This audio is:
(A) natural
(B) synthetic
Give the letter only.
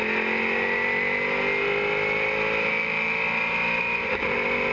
A